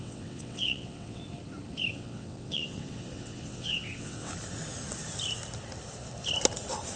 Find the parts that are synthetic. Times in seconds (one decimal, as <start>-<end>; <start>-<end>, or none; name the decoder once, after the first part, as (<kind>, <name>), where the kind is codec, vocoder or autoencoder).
0.0-1.2 (vocoder, WaveNeXt); 1.9-4.3